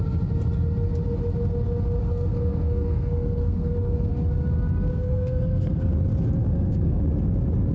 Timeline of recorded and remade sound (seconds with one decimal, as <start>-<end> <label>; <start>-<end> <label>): 0.0-2.0 recorded; 2.0-4.1 remade; 4.1-4.9 recorded; 4.9-5.9 remade; 5.9-6.4 recorded; 6.4-7.0 remade; 7.0-7.7 recorded